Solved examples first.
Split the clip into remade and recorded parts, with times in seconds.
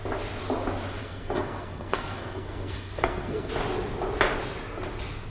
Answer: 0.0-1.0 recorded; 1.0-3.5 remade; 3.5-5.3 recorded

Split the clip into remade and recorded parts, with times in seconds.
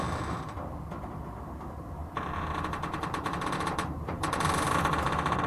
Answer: 0.0-2.0 recorded; 2.0-5.5 remade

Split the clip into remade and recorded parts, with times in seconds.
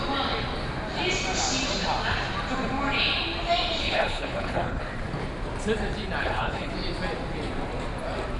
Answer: 0.0-3.8 recorded; 3.8-4.8 remade; 4.8-6.2 recorded; 6.2-6.7 remade; 6.7-8.4 recorded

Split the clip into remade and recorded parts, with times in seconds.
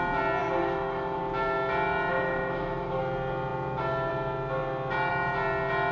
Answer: 0.0-0.4 recorded; 0.4-1.2 remade; 1.2-2.1 recorded; 2.1-3.0 remade; 3.0-5.9 recorded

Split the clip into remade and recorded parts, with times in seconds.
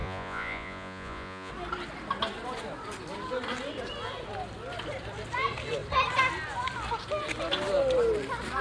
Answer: 0.0-1.5 remade; 1.5-8.6 recorded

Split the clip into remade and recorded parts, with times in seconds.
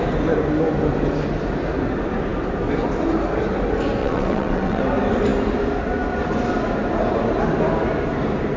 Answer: 0.0-4.0 recorded; 4.0-4.8 remade; 4.8-8.6 recorded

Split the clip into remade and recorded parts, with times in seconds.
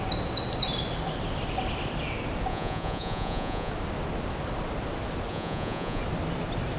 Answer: 0.0-2.5 recorded; 2.5-3.7 remade; 3.7-5.3 recorded; 5.3-6.0 remade; 6.0-6.8 recorded